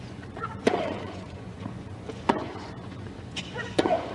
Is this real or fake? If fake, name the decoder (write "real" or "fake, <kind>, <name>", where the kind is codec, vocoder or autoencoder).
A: fake, vocoder, Vocos